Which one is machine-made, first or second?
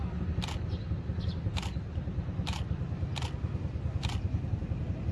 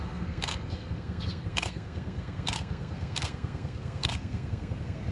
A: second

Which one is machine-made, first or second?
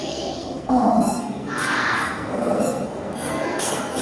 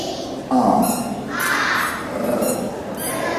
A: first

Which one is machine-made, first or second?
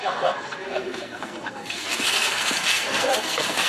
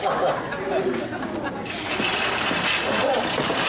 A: first